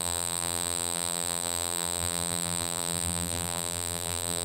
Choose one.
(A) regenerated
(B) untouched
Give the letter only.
A